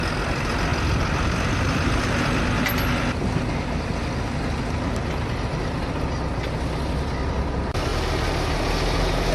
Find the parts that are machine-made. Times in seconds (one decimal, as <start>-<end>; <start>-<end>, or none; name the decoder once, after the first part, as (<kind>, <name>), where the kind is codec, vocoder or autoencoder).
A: none